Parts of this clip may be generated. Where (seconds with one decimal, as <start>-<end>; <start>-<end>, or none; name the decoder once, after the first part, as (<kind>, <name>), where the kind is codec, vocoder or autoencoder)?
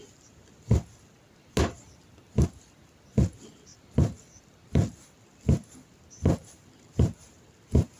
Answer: none